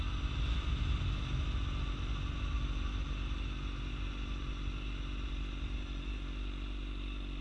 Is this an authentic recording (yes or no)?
yes